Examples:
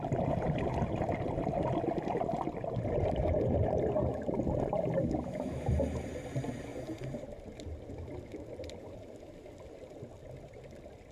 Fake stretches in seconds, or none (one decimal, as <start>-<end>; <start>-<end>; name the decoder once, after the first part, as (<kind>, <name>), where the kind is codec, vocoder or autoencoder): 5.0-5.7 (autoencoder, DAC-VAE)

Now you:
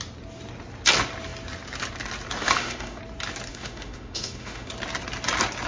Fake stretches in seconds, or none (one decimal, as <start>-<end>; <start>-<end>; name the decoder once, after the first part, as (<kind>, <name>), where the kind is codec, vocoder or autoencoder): 2.4-3.0 (autoencoder, DAC-VAE); 3.5-4.7

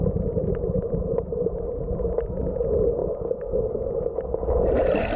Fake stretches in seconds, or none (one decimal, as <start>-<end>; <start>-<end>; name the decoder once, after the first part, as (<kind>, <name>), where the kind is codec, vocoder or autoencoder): none

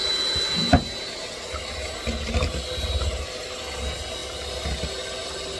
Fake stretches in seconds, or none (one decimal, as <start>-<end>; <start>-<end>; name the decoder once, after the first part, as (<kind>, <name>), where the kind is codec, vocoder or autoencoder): none

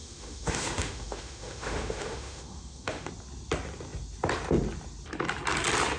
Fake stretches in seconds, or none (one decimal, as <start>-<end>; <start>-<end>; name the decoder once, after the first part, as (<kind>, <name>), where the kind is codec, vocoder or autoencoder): 0.0-3.1 (autoencoder, DAC-VAE)

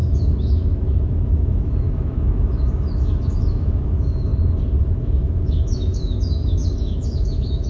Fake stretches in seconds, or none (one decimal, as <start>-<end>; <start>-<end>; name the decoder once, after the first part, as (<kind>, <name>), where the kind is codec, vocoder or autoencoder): 0.0-4.3 (autoencoder, DAC-VAE); 4.8-7.7